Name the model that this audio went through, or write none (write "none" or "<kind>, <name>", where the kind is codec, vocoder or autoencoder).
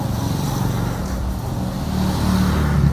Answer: none